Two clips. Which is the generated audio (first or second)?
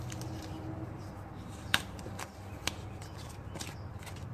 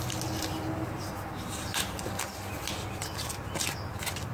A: first